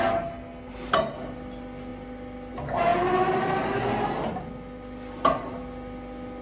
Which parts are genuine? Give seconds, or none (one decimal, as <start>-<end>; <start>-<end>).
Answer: 0.0-6.4